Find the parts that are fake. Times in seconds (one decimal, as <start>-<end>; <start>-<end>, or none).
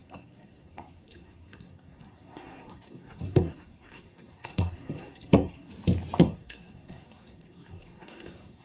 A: 0.0-5.7; 6.2-8.6